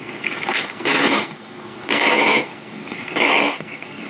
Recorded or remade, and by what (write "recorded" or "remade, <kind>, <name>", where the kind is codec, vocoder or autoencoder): remade, codec, SNAC